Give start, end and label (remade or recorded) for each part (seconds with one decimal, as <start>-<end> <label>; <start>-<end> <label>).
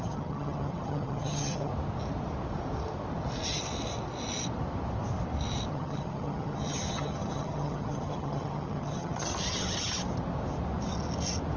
0.0-1.7 remade; 1.7-5.7 recorded; 5.7-9.3 remade; 9.3-11.6 recorded